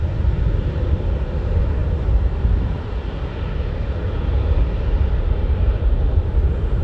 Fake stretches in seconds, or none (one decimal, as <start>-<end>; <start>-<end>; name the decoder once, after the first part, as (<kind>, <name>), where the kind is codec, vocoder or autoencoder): none